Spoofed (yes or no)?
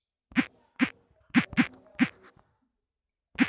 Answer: no